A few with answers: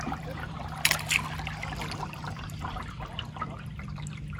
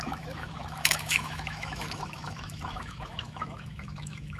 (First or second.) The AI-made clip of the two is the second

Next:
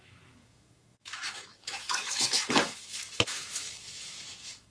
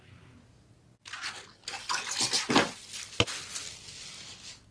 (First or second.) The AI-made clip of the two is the first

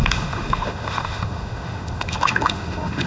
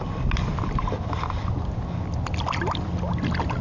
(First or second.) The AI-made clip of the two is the first